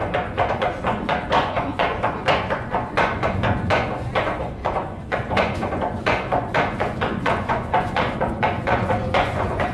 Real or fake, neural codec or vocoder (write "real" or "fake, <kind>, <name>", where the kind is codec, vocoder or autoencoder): fake, vocoder, Vocos